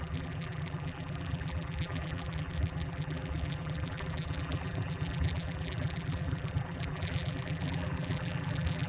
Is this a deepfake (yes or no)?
yes